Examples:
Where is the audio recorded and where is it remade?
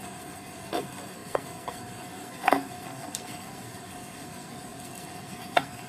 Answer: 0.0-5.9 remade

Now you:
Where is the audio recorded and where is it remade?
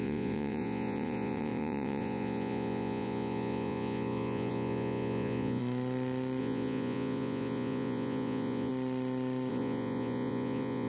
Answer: 0.0-5.6 remade; 5.6-6.4 recorded; 6.4-8.7 remade; 8.7-9.5 recorded; 9.5-10.9 remade